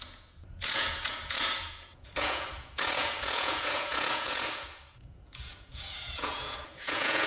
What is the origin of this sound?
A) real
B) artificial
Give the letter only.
B